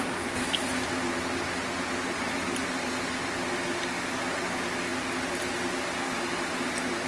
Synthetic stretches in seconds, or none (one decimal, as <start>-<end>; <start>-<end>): none